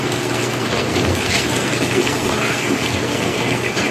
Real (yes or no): no